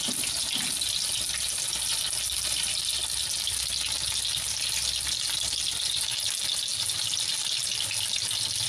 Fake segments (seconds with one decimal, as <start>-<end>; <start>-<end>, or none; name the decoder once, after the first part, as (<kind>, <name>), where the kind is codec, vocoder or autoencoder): none